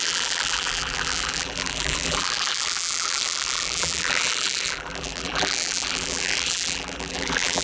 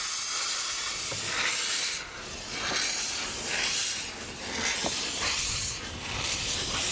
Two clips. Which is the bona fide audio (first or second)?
second